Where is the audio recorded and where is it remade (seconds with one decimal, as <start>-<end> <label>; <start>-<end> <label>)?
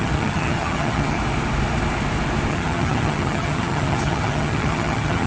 0.0-1.2 remade; 1.2-2.5 recorded; 2.5-5.3 remade